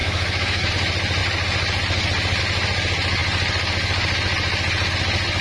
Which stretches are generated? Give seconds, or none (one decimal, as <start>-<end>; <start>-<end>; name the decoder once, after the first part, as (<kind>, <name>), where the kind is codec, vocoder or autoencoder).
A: 0.0-0.7 (autoencoder, DAC-VAE)